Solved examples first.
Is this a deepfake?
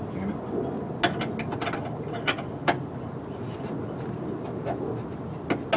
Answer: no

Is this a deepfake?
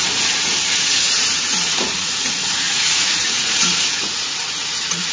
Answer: yes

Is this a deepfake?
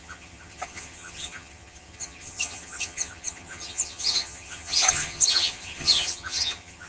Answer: yes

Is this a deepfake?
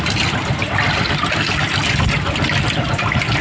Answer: no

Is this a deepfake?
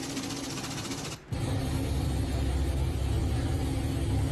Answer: no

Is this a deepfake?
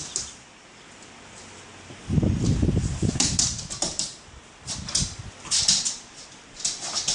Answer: yes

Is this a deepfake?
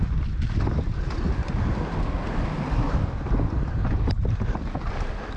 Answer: no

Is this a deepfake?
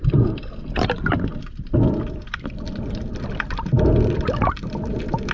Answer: no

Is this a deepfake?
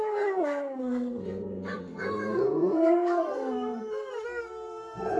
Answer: yes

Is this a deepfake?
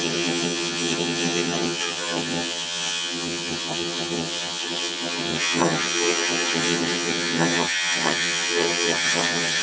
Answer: yes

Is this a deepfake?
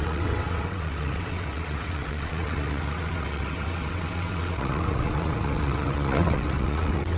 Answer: yes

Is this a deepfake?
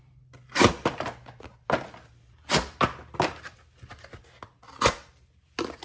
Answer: no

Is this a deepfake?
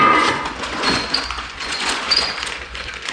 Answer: yes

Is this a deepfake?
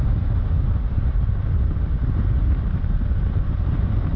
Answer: no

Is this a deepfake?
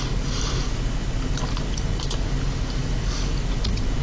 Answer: no